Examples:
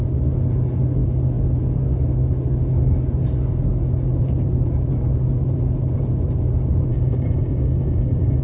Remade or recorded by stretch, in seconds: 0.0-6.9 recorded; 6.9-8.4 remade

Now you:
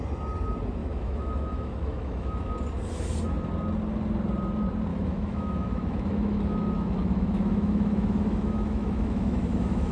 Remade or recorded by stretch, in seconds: 0.0-0.8 recorded; 0.8-2.5 remade; 2.5-4.9 recorded; 4.9-9.9 remade

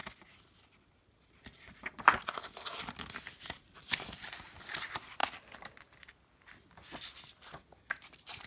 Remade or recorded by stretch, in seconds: 0.0-8.5 recorded

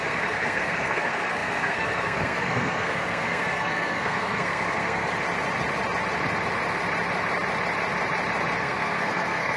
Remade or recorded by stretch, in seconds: 0.0-5.1 remade; 5.1-8.6 recorded; 8.6-9.6 remade

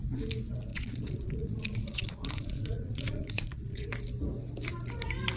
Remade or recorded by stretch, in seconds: 0.0-0.7 recorded; 0.7-3.9 remade; 3.9-5.4 recorded

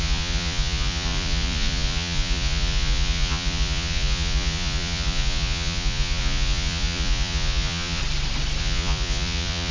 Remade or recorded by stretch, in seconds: 0.0-8.0 remade; 8.0-8.6 recorded; 8.6-9.7 remade

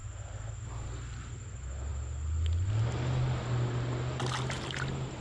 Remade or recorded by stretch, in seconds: 0.0-5.2 recorded